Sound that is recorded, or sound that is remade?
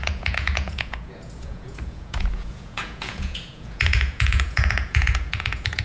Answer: remade